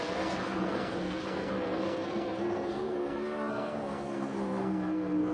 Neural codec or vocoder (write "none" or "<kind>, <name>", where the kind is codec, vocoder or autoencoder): codec, SNAC